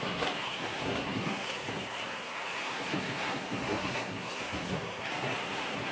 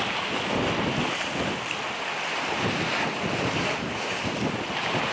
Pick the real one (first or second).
second